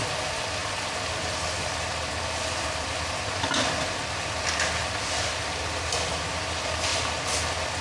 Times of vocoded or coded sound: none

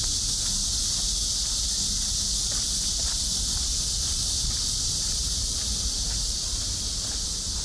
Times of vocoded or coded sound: none

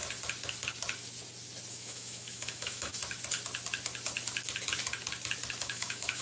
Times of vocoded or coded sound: 1.7-3.0 (autoencoder, DAC-VAE); 5.6-6.2